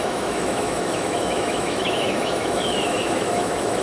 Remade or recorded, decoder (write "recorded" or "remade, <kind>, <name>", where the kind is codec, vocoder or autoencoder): remade, autoencoder, DAC-VAE